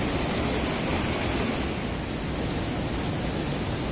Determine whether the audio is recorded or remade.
recorded